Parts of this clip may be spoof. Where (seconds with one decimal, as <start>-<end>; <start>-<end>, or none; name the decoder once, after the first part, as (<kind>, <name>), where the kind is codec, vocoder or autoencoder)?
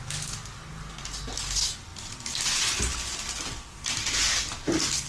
none